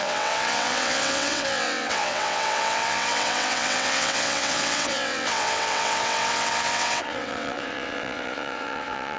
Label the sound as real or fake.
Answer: fake